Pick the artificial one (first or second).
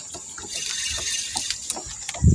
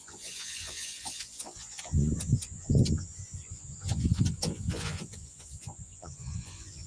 second